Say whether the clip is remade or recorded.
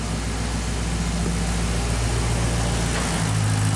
recorded